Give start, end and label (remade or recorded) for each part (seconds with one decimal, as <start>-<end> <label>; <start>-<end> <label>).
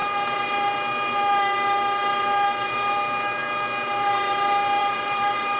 0.0-4.8 recorded; 4.8-5.6 remade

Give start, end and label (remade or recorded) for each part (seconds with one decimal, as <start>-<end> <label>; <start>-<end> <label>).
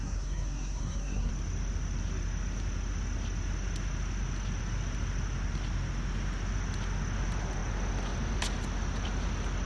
0.0-1.3 remade; 1.3-9.7 recorded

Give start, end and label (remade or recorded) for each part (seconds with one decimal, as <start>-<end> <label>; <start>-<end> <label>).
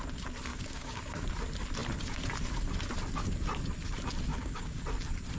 0.0-0.5 recorded; 0.5-1.0 remade; 1.0-4.3 recorded; 4.3-4.8 remade; 4.8-5.4 recorded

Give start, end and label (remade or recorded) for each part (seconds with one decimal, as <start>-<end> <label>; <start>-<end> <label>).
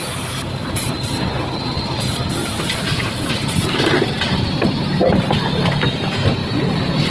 0.0-2.4 recorded; 2.4-4.1 remade; 4.1-6.4 recorded; 6.4-7.1 remade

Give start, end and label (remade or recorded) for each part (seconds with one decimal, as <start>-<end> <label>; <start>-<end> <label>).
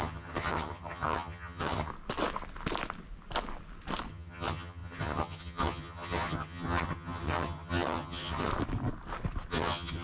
0.0-1.9 remade; 1.9-4.1 recorded; 4.1-8.5 remade; 8.5-9.5 recorded; 9.5-10.0 remade